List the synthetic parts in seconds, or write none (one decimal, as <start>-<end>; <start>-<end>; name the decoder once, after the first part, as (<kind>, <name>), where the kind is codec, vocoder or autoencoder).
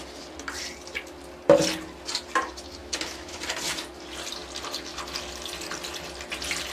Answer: 2.8-3.4 (autoencoder, DAC-VAE)